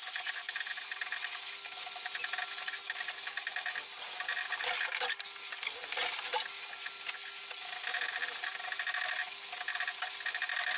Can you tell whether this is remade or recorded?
recorded